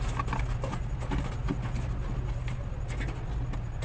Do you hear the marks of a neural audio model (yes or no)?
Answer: no